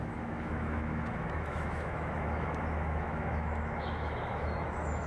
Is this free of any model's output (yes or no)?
no